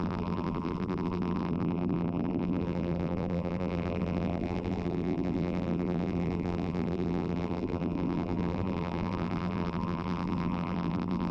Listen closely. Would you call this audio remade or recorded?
remade